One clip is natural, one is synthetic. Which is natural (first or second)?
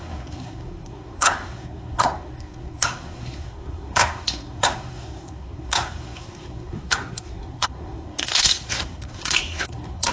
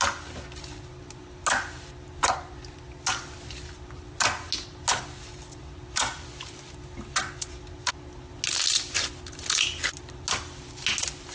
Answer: second